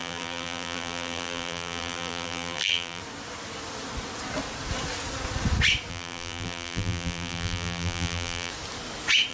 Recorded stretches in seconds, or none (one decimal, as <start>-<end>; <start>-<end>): 3.0-5.9; 8.5-9.3